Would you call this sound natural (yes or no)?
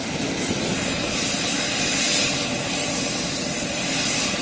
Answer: yes